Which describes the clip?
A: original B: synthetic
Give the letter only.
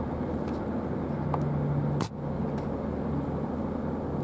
A